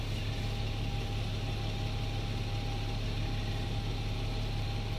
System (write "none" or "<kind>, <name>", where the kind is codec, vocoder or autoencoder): none